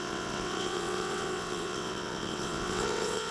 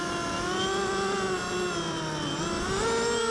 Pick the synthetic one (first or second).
first